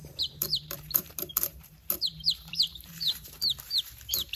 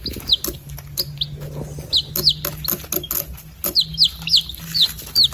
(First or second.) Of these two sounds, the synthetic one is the first